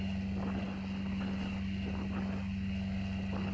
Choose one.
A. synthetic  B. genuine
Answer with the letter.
B